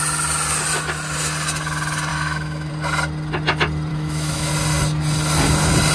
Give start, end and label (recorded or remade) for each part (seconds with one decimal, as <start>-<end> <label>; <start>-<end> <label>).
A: 0.0-2.1 recorded; 2.1-2.7 remade; 2.7-3.9 recorded; 3.9-4.5 remade; 4.5-5.9 recorded